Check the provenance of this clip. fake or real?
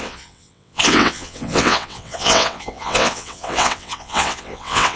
fake